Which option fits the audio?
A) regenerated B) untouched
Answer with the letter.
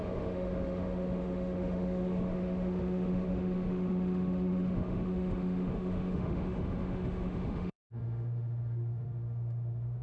A